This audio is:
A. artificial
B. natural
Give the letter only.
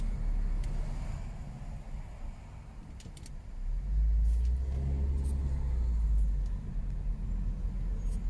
B